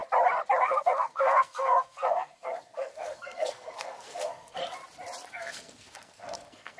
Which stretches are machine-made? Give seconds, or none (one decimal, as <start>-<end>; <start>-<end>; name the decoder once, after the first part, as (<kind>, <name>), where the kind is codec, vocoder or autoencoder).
0.6-4.6 (codec, SNAC); 5.3-6.8